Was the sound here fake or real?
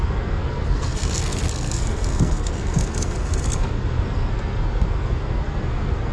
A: fake